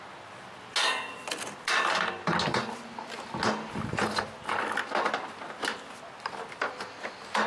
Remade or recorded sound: recorded